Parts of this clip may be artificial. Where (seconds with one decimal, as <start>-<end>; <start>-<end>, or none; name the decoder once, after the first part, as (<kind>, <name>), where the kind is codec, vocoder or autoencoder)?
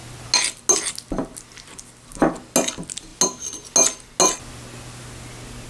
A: none